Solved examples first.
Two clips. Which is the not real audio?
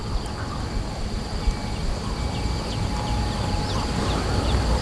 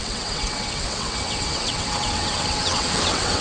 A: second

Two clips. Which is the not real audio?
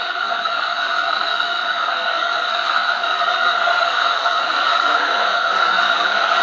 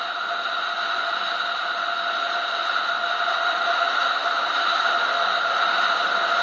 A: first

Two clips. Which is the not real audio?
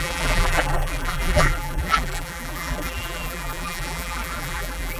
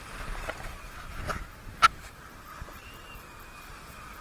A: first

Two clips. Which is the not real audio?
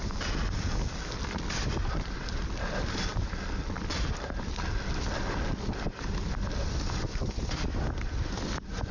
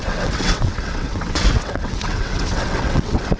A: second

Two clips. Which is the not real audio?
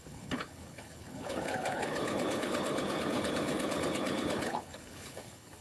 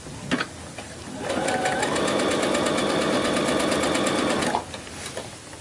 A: first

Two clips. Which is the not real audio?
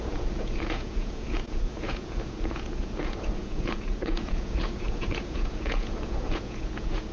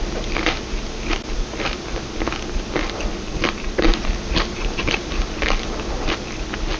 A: first